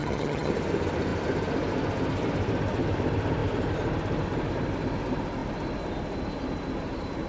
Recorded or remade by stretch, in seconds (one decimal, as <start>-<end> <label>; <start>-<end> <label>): 0.0-0.5 remade; 0.5-7.3 recorded